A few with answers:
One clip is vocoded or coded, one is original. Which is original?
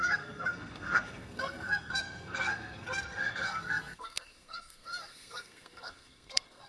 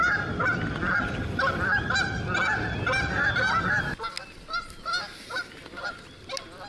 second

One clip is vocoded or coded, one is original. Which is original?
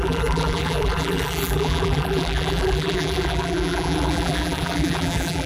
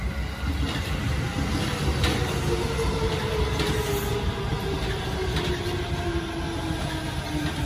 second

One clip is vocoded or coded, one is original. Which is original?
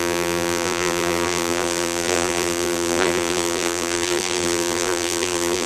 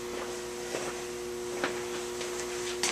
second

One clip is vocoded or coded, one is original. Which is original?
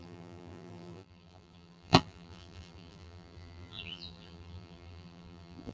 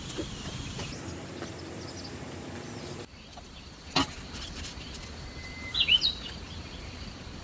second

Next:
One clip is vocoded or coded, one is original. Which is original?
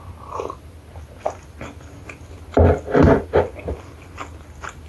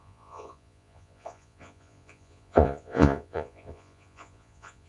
first